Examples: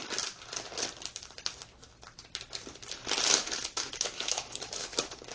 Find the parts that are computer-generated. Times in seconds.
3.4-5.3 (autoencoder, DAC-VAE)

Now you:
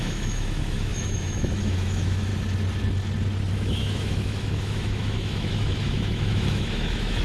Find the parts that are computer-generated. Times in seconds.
0.0-2.3 (autoencoder, DAC-VAE); 3.5-7.2

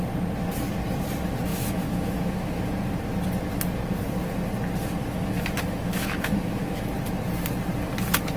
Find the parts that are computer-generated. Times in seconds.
1.5-2.7 (autoencoder, DAC-VAE); 5.0-6.9

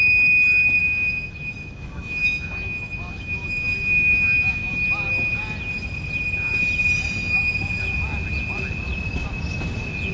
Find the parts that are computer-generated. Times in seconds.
0.8-4.7 (autoencoder, DAC-VAE)

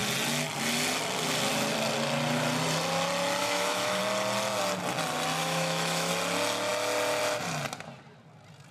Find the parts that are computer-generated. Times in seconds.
3.4-4.0 (autoencoder, DAC-VAE); 5.4-6.1

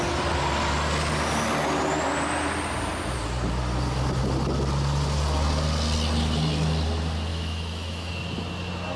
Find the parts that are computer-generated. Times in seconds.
7.3-8.1 (autoencoder, DAC-VAE)